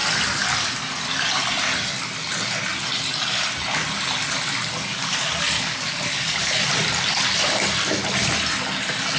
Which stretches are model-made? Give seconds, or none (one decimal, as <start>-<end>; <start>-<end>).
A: 4.9-6.6